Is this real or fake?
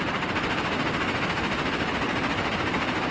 real